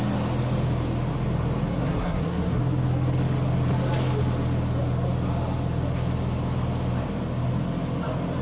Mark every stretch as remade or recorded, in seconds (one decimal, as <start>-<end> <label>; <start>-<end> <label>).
0.0-1.7 recorded; 1.7-2.6 remade; 2.6-8.4 recorded